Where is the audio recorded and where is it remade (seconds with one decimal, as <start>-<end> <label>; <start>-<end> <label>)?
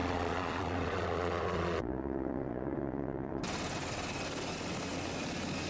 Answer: 0.0-3.4 remade; 3.4-5.7 recorded